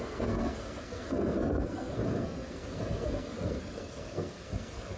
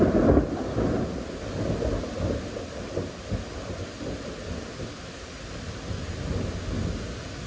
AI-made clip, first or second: first